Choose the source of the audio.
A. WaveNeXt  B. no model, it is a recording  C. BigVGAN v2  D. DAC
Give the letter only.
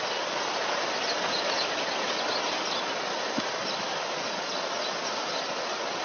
B